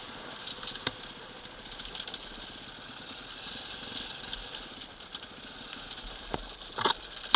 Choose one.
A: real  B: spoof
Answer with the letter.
A